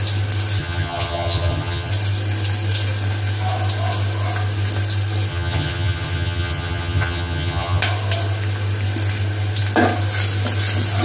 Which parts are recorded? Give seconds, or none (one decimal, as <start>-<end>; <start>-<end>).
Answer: 0.0-0.6; 1.9-5.3; 7.8-11.0